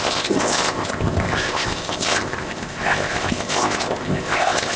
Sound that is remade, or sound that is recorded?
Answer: remade